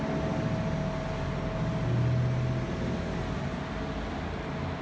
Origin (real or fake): real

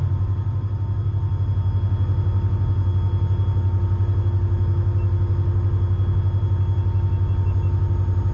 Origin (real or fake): real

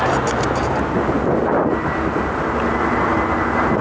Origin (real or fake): real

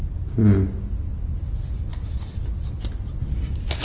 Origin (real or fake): real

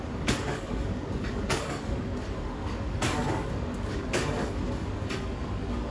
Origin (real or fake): fake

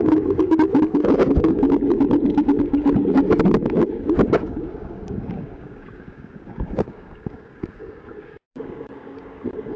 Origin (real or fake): fake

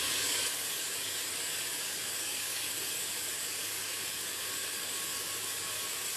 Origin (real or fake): fake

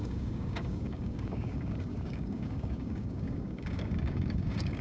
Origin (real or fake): fake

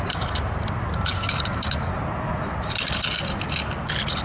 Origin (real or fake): real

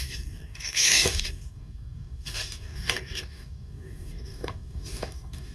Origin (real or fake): fake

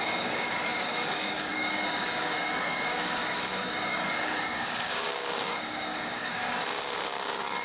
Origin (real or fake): fake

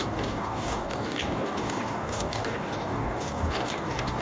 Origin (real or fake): fake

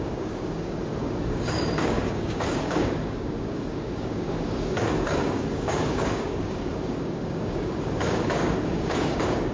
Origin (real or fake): fake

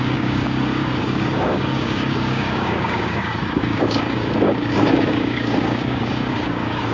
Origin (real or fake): fake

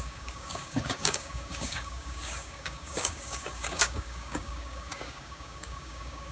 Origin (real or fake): fake